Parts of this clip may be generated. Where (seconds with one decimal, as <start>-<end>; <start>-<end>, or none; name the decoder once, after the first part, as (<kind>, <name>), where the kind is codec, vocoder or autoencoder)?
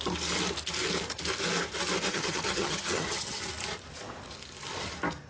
2.1-3.4 (vocoder, HiFi-GAN)